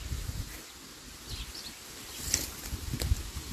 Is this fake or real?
real